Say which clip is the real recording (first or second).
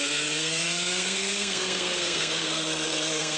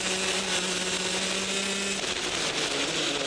second